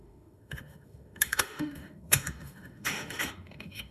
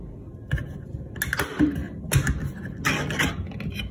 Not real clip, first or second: first